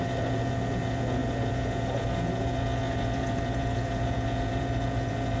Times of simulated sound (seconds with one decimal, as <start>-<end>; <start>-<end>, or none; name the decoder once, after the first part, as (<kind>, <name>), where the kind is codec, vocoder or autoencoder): 0.0-5.4 (vocoder, Vocos)